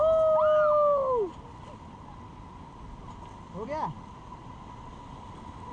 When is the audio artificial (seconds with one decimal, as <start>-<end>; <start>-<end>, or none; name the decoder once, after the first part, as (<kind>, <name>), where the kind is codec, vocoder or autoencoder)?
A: none